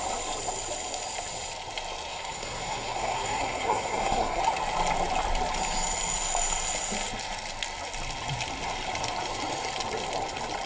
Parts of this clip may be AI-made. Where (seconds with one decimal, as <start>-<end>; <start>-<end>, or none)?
2.1-4.4

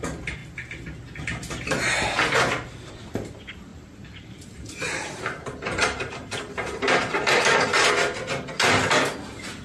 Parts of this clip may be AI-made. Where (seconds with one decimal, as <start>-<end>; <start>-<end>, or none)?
3.7-7.9

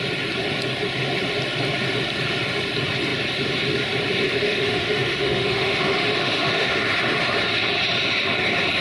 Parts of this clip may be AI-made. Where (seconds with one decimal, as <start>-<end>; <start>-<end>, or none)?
4.4-6.8

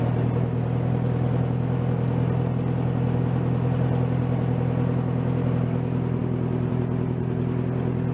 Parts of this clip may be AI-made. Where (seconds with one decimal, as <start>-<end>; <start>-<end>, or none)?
none

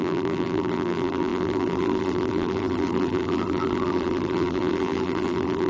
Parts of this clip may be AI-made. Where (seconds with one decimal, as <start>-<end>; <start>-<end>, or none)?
0.0-5.7

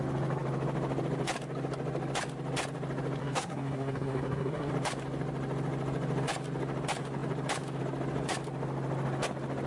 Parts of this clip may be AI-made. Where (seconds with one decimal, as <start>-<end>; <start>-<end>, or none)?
3.2-4.7